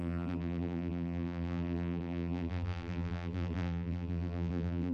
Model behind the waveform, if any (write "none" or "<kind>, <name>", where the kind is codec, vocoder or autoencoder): vocoder, BigVGAN v2